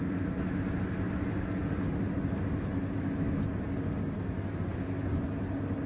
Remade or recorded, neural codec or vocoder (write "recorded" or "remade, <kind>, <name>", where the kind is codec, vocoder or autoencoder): recorded